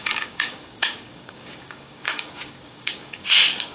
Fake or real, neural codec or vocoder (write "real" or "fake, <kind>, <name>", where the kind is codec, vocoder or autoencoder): fake, codec, DAC